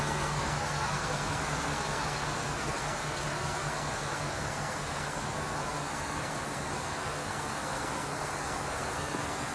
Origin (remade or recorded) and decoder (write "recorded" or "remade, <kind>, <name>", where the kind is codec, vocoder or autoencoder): remade, codec, SNAC